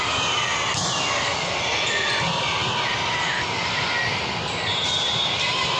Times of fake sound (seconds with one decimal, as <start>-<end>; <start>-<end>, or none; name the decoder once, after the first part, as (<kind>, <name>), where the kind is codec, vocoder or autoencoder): none